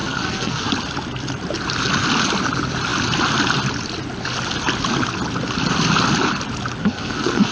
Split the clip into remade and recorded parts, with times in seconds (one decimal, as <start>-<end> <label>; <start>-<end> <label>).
0.0-0.7 remade; 0.7-6.8 recorded; 6.8-7.5 remade